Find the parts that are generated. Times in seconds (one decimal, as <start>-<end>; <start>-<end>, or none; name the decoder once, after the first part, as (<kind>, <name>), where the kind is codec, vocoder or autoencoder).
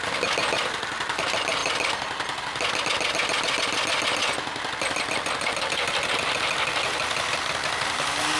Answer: none